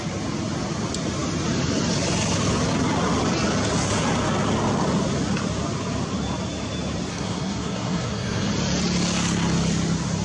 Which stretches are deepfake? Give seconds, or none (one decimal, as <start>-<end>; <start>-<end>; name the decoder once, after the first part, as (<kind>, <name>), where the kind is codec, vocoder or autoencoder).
7.1-8.5 (codec, SNAC)